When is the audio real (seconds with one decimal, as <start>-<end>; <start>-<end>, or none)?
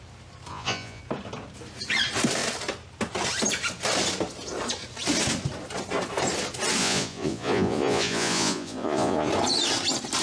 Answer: 0.0-0.5; 1.0-6.8; 9.3-10.2